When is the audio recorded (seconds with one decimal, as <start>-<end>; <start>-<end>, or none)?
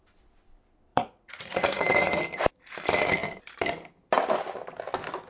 0.0-0.9; 2.2-5.3